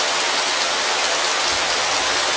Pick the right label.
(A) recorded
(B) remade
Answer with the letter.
A